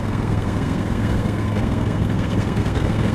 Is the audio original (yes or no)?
no